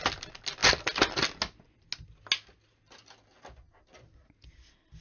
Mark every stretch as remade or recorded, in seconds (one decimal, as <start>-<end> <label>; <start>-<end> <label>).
0.0-5.0 recorded